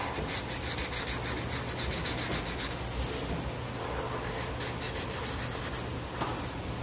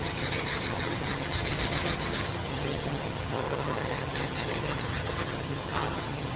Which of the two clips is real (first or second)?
first